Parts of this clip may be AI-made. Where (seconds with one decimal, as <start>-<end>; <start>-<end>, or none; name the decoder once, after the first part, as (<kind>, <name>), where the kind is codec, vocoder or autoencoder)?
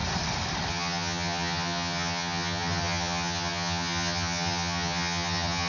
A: 0.7-5.7 (vocoder, HiFi-GAN)